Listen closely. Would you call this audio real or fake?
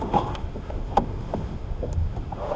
fake